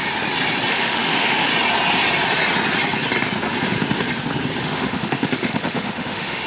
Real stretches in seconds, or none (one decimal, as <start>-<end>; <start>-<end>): 0.0-0.7; 1.5-4.6